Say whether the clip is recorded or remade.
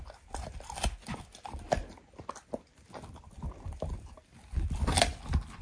recorded